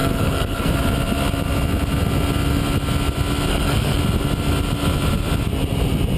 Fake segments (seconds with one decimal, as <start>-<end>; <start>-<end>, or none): 0.0-0.7; 3.5-4.0